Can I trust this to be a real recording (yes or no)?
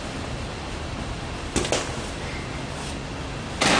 yes